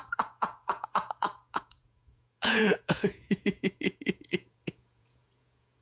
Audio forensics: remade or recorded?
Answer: remade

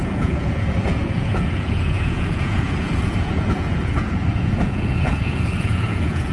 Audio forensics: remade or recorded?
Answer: remade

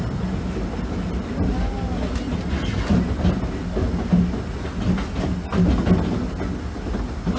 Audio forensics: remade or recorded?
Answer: recorded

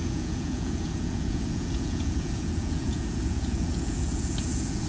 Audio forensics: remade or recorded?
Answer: remade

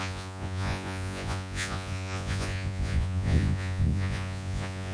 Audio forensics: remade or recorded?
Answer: remade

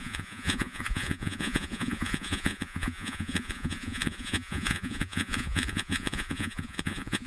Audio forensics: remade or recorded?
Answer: remade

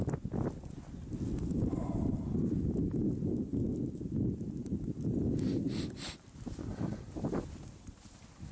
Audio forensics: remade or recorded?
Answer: recorded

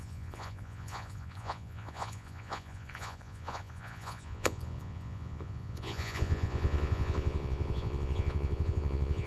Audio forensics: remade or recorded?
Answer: remade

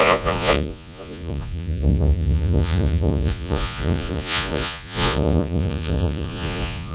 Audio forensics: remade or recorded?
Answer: remade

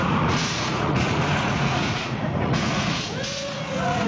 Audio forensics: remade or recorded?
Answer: remade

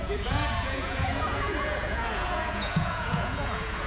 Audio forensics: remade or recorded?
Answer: remade